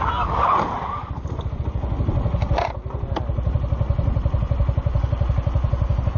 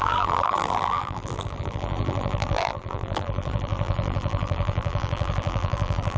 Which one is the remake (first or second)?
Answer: second